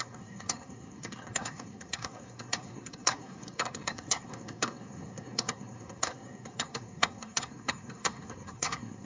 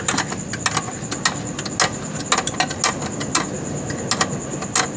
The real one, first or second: second